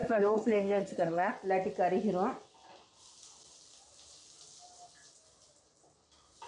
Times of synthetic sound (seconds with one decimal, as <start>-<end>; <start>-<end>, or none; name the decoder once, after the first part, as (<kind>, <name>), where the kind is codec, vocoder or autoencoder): 0.0-1.3 (codec, SNAC)